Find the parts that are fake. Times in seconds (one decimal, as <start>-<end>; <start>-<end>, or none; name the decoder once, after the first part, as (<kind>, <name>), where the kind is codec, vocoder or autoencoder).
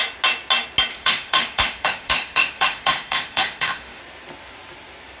0.9-4.0 (autoencoder, DAC-VAE)